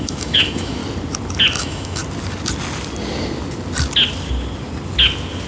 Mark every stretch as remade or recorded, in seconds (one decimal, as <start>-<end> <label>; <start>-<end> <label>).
0.0-0.8 remade; 0.8-1.6 recorded; 1.6-2.0 remade; 2.0-5.5 recorded